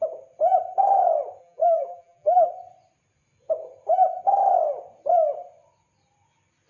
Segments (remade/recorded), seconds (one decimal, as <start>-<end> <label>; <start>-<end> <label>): 0.0-1.4 recorded; 1.4-2.5 remade; 2.5-6.7 recorded